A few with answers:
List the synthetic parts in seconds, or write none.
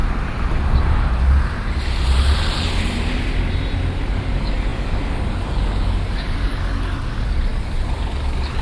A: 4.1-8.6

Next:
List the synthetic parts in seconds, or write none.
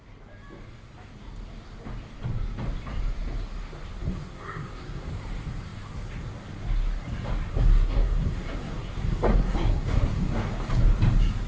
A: 4.0-5.1; 7.5-10.5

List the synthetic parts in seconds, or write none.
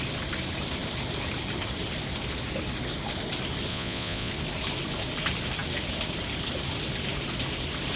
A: 3.7-4.3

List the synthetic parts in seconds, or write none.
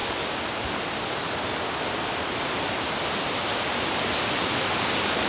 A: 2.3-5.3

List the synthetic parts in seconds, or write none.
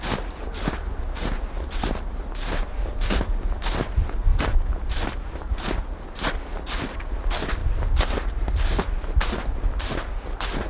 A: 4.3-6.3; 7.6-9.5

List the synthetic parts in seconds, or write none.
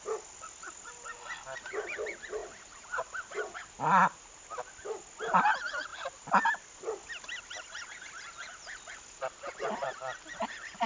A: none